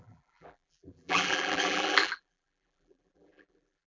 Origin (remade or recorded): remade